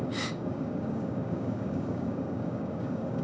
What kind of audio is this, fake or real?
fake